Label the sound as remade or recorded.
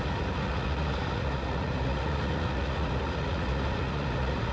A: remade